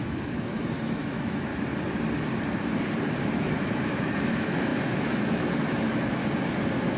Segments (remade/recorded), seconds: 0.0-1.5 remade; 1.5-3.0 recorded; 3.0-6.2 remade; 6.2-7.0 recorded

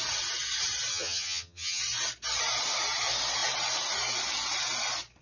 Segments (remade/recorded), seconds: 0.0-0.9 recorded; 0.9-1.8 remade; 1.8-5.2 recorded

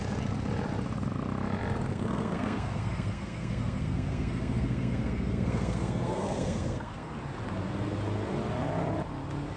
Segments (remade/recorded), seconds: 0.0-1.9 recorded; 1.9-7.1 remade; 7.1-9.6 recorded

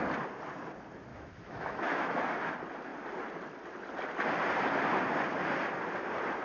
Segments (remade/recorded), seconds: 0.0-1.1 recorded; 1.1-2.2 remade; 2.2-6.4 recorded

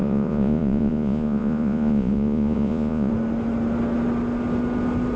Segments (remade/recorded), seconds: 0.0-3.1 remade; 3.1-5.2 recorded